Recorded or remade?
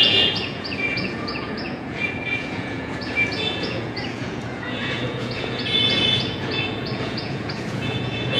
remade